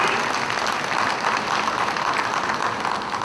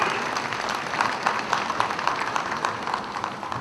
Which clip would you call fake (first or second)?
second